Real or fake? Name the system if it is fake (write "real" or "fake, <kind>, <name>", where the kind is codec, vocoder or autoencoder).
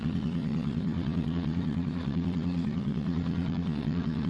fake, vocoder, Vocos